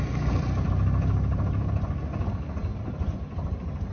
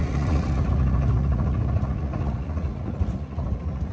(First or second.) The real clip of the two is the first